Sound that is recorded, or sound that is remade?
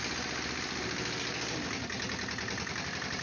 recorded